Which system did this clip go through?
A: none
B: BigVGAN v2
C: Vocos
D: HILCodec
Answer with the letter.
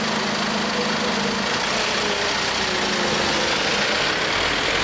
A